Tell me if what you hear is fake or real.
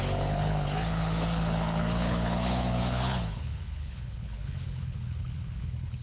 fake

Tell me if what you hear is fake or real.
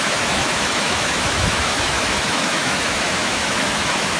fake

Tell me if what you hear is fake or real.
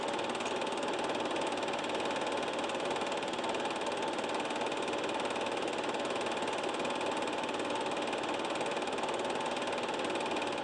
real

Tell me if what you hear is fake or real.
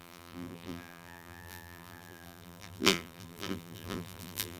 fake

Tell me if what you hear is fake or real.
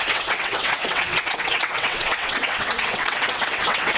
fake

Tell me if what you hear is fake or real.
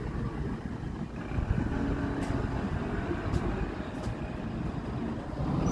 real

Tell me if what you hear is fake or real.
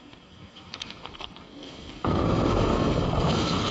fake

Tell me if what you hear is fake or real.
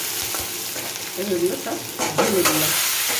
real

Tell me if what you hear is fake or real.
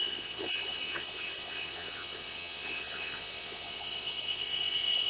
fake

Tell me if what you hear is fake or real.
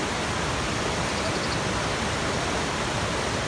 real